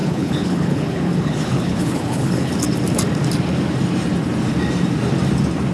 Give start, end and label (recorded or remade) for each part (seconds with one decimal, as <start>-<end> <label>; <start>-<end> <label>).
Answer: 0.0-2.5 remade; 2.5-5.7 recorded